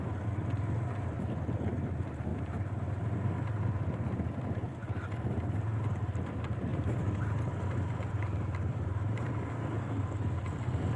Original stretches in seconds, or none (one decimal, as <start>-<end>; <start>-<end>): 0.0-2.3; 3.0-6.7; 7.4-8.1; 9.3-11.0